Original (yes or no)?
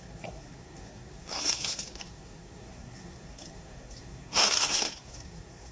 no